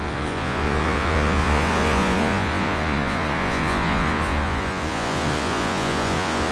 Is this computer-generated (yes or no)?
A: yes